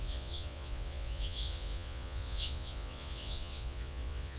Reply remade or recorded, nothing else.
remade